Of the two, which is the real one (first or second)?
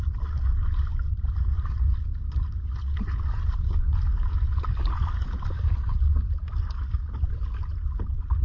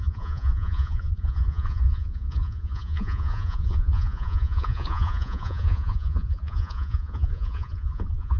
first